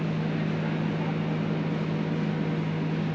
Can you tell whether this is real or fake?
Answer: real